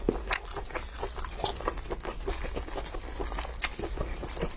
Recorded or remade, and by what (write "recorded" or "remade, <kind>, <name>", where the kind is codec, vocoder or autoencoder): recorded